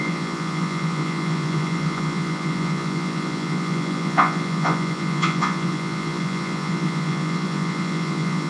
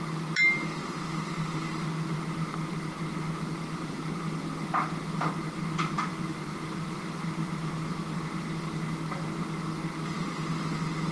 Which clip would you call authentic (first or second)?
second